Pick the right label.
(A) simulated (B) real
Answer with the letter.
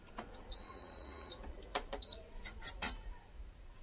A